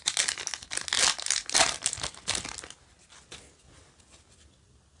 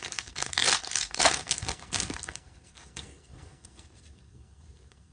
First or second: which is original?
first